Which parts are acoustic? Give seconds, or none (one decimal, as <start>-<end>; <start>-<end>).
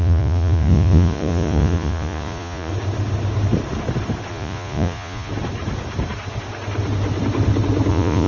2.7-4.3; 5.3-7.9